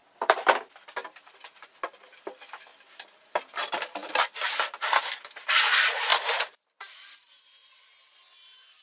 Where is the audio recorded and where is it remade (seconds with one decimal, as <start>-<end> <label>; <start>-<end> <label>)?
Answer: 0.0-0.6 remade; 0.6-2.7 recorded; 2.7-3.4 remade; 3.4-6.1 recorded; 6.1-8.0 remade; 8.0-8.8 recorded

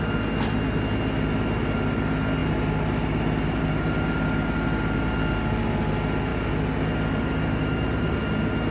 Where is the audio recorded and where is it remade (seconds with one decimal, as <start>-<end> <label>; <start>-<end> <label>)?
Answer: 0.0-7.6 recorded; 7.6-8.2 remade; 8.2-8.7 recorded

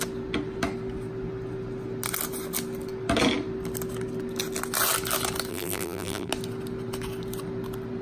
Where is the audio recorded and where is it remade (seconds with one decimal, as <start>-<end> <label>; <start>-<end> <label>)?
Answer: 0.0-5.5 recorded; 5.5-6.3 remade; 6.3-8.0 recorded

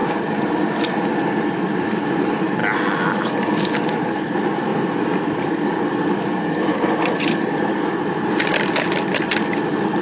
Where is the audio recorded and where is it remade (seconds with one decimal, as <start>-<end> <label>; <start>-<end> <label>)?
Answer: 0.0-10.0 recorded

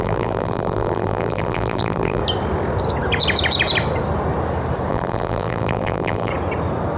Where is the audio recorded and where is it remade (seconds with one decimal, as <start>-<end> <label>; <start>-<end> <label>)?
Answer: 0.0-2.2 remade; 2.2-4.9 recorded; 4.9-6.3 remade; 6.3-7.0 recorded

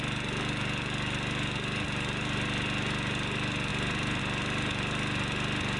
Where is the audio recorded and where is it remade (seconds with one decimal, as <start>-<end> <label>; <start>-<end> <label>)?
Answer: 0.0-3.7 recorded; 3.7-4.2 remade; 4.2-5.8 recorded

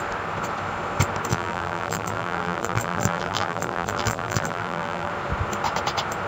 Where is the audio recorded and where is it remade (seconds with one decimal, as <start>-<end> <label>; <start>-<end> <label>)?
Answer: 0.0-1.3 recorded; 1.3-5.1 remade; 5.1-6.3 recorded

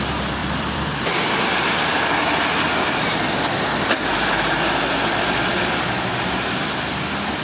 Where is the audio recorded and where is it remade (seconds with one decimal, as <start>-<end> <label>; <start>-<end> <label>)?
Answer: 0.0-0.4 recorded; 0.4-1.5 remade; 1.5-7.4 recorded